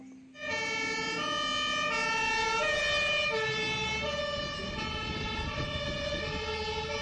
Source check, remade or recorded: recorded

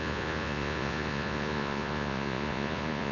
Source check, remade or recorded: remade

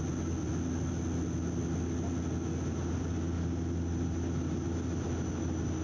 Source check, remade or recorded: recorded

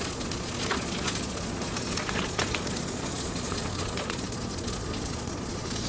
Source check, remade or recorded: remade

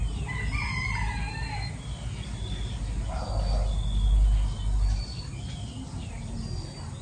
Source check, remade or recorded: recorded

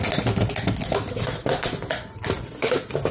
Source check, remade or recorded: recorded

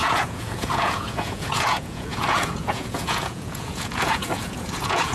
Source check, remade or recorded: remade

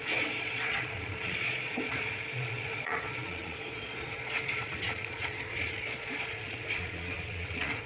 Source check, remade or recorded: remade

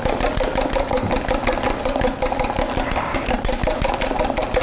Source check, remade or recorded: recorded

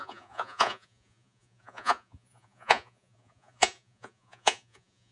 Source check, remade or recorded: remade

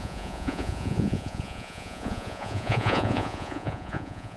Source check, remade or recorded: remade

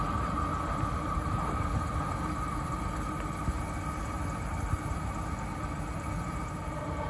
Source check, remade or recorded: recorded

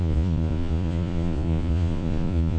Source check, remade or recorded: remade